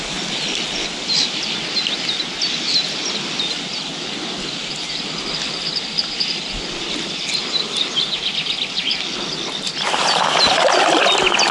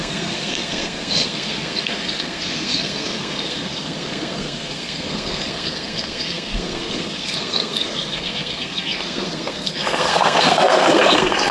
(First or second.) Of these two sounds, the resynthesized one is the second